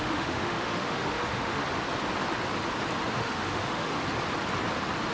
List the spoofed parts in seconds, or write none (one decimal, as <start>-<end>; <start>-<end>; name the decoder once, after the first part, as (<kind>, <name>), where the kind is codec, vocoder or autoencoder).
0.0-1.6 (autoencoder, DAC-VAE); 3.1-3.9